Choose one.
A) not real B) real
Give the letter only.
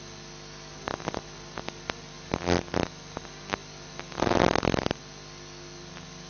B